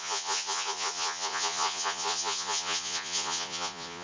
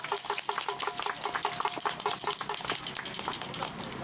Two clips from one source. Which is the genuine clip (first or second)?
second